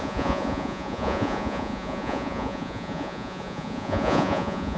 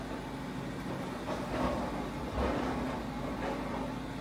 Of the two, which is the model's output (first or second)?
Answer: first